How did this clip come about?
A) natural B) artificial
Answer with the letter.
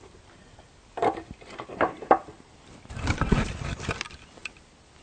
A